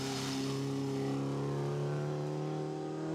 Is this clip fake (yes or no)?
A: no